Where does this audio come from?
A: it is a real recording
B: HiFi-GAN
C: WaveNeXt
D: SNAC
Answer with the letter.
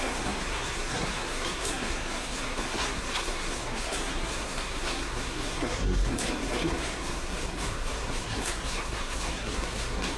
D